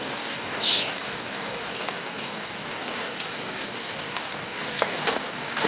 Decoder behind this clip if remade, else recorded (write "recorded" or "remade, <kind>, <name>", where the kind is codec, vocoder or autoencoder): remade, codec, DAC